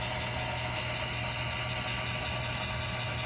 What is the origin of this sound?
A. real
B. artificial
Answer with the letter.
A